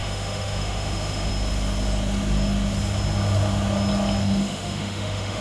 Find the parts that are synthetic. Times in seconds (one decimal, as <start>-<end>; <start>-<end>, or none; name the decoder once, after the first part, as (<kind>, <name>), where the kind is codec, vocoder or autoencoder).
0.0-1.3 (autoencoder, DAC-VAE); 4.2-5.4